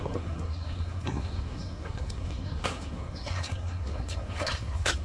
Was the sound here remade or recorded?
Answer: remade